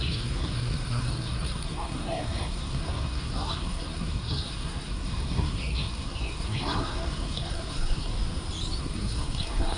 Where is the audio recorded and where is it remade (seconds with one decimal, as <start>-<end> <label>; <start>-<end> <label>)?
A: 0.0-8.1 remade; 8.1-8.8 recorded; 8.8-9.8 remade